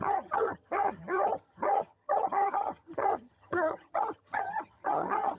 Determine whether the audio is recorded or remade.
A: remade